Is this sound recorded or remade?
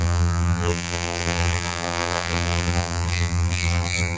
remade